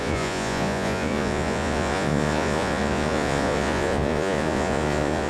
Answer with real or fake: fake